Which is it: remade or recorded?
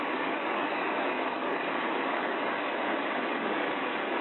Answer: remade